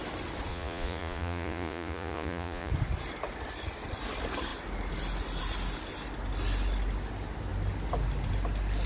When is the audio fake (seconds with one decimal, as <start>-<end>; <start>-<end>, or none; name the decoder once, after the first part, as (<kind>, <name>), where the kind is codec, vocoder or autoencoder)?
0.5-2.7 (vocoder, Vocos)